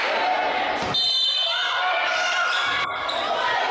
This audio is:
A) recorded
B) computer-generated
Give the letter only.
A